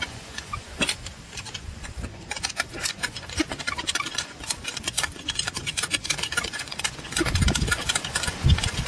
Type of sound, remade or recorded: remade